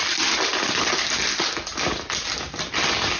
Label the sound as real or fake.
real